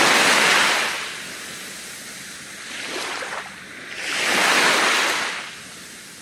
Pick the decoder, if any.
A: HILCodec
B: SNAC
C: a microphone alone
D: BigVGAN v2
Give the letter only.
C